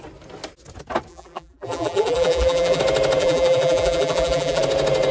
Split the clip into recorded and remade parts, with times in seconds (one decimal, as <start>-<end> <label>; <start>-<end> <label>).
0.0-1.1 recorded; 1.1-2.8 remade; 2.8-3.2 recorded; 3.2-4.6 remade; 4.6-5.1 recorded